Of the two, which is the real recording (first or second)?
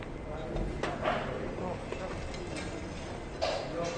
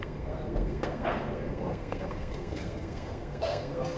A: first